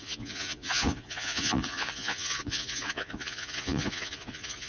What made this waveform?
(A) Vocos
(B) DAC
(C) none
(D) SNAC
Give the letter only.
A